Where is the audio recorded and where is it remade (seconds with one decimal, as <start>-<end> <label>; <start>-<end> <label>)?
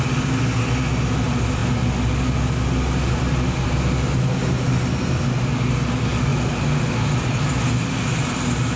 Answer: 0.0-8.8 recorded